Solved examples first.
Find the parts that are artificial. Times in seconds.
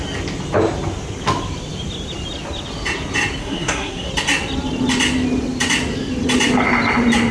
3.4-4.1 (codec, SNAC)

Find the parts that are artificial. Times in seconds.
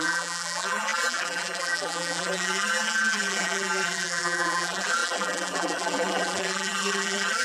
0.0-7.4 (vocoder, BigVGAN v2)